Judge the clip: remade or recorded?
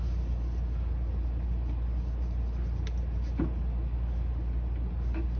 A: recorded